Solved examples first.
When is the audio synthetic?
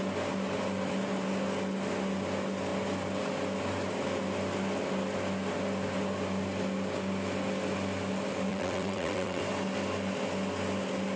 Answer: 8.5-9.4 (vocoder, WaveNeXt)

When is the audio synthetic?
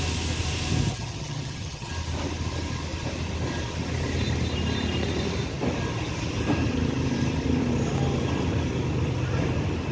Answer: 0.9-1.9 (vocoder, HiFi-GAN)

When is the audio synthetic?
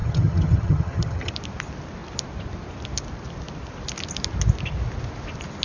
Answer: 0.0-1.3 (vocoder, HiFi-GAN)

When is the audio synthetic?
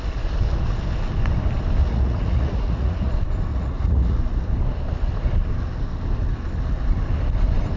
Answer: 1.8-3.1 (vocoder, Vocos); 3.5-4.2